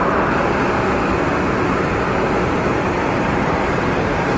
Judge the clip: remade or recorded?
recorded